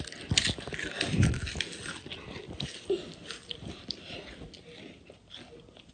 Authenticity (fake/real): real